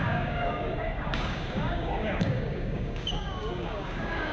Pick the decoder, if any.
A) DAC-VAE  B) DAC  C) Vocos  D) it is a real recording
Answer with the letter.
B